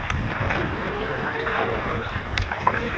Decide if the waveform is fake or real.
fake